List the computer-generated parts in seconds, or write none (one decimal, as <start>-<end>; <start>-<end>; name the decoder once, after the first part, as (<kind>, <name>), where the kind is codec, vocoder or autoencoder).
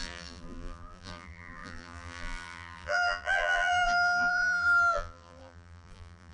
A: 0.0-6.3 (vocoder, BigVGAN v2)